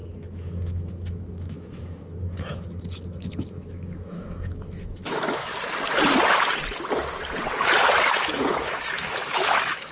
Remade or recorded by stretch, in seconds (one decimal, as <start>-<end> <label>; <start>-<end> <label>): 0.0-5.5 remade; 5.5-8.1 recorded; 8.1-9.9 remade